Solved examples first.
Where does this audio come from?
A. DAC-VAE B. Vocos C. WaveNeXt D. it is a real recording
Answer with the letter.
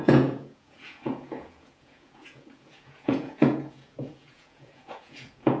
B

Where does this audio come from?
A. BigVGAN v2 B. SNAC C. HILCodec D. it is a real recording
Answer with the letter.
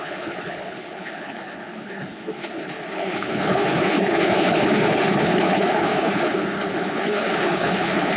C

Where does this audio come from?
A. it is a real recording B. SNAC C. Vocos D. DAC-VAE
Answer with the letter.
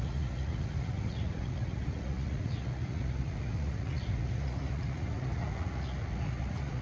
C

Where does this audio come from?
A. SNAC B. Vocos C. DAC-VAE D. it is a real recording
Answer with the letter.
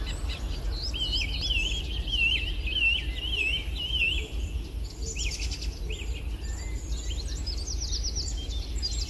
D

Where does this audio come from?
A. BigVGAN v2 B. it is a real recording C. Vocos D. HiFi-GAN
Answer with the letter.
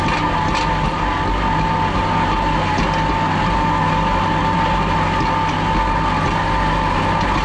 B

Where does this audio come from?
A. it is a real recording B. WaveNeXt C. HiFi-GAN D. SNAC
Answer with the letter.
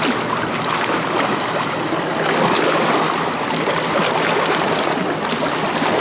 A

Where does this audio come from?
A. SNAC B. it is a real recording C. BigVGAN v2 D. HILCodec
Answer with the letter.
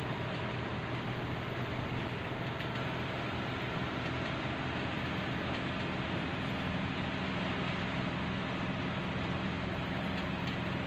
B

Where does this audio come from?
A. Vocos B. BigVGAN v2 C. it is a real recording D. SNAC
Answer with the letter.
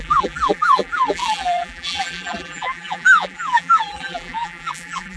B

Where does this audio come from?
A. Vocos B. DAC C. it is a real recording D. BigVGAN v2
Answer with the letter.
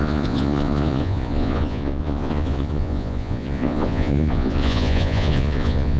A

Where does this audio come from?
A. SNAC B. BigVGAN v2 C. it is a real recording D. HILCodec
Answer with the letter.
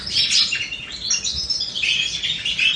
C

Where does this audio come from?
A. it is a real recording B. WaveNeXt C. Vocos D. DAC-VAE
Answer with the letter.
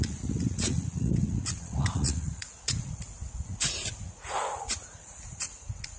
C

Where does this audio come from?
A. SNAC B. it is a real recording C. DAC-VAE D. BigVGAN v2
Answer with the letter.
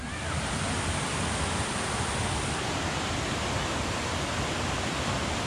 B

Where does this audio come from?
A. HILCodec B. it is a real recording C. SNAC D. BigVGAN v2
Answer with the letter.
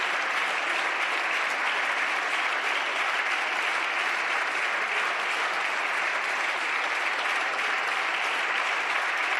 B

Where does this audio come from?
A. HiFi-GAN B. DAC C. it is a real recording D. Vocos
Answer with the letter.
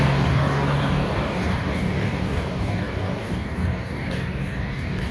B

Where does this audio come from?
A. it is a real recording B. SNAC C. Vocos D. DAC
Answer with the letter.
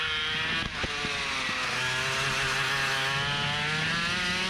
A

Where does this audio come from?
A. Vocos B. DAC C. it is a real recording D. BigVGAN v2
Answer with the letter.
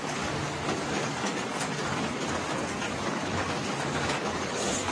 B